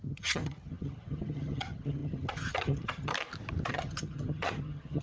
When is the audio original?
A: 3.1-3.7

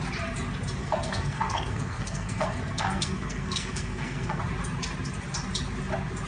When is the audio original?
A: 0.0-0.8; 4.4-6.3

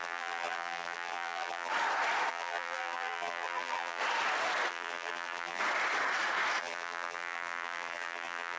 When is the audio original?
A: 1.7-2.3; 4.0-4.7; 5.6-6.6